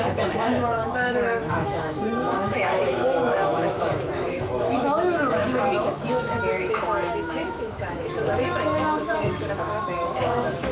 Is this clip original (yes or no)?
no